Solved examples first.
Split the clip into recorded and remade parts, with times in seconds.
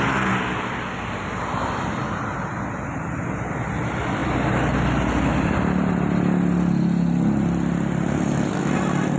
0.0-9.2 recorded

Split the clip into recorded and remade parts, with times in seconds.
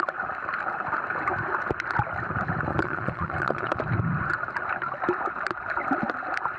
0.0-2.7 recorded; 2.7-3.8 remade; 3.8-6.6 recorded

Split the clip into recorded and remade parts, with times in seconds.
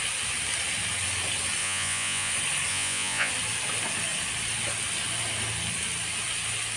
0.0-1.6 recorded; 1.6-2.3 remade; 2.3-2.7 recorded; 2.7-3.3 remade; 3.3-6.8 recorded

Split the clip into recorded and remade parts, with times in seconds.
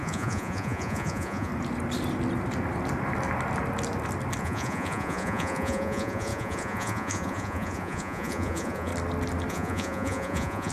0.0-1.5 remade; 1.5-4.4 recorded; 4.4-8.9 remade; 8.9-9.5 recorded; 9.5-10.7 remade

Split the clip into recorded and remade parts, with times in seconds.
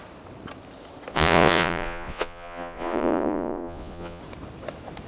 0.0-1.1 recorded; 1.1-4.2 remade; 4.2-5.1 recorded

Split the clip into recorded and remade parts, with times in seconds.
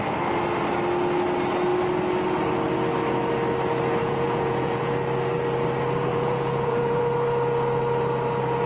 0.0-4.0 recorded; 4.0-4.9 remade; 4.9-6.1 recorded; 6.1-7.0 remade; 7.0-8.7 recorded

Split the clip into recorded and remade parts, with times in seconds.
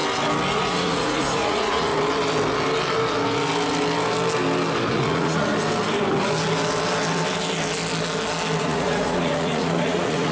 0.0-0.5 recorded; 0.5-1.9 remade; 1.9-4.9 recorded; 4.9-5.5 remade; 5.5-8.6 recorded; 8.6-10.3 remade